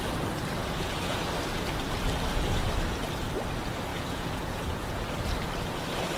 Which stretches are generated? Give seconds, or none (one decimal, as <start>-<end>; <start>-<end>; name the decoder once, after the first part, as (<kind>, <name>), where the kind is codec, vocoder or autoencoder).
0.6-1.3 (vocoder, Vocos); 3.9-5.0